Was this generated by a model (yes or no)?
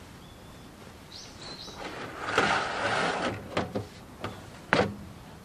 no